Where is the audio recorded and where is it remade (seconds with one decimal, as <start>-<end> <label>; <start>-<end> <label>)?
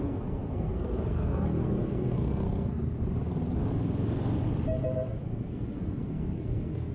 0.0-2.8 remade; 2.8-5.2 recorded; 5.2-6.9 remade